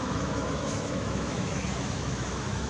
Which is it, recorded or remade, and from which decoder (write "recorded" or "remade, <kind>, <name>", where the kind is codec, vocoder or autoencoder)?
remade, autoencoder, DAC-VAE